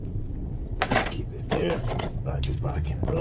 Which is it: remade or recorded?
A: remade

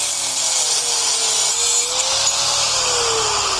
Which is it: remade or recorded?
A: recorded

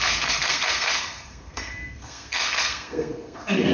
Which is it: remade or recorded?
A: remade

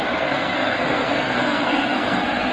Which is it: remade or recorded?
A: remade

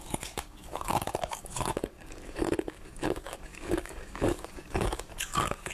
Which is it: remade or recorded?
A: remade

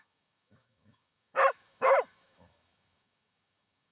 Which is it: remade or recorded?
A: remade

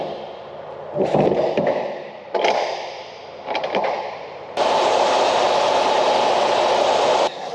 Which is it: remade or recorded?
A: remade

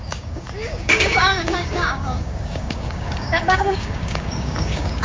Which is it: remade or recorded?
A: remade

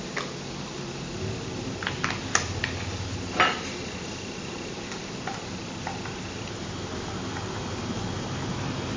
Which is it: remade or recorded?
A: recorded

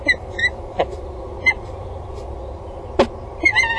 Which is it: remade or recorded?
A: recorded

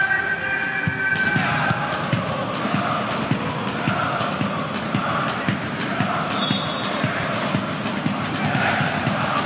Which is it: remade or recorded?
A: recorded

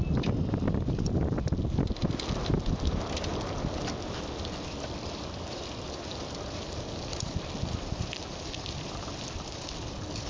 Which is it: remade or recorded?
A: recorded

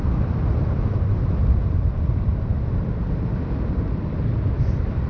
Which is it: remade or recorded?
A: remade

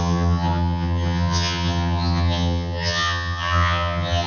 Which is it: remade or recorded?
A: remade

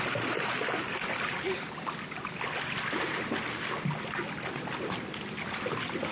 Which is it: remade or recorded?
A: recorded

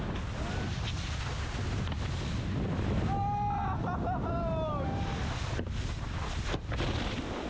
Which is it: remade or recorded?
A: recorded